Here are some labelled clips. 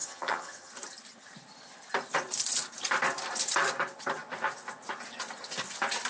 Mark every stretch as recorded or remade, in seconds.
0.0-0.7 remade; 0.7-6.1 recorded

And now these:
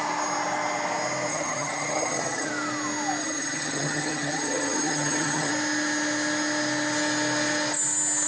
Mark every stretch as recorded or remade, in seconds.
0.0-1.3 recorded; 1.3-2.5 remade; 2.5-3.2 recorded; 3.2-5.5 remade; 5.5-8.3 recorded